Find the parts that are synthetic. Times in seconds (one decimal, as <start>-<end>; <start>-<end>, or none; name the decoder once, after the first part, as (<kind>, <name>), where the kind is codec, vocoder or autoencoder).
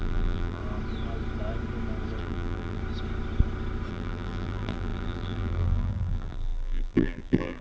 0.0-0.6 (vocoder, BigVGAN v2); 2.2-2.8; 3.9-7.6